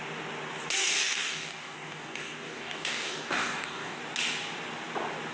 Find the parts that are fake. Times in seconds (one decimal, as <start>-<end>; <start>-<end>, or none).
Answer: 0.8-4.0